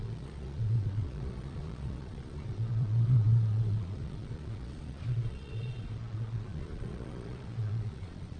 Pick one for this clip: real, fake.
fake